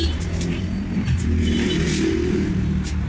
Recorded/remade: remade